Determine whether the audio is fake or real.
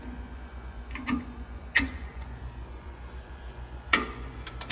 fake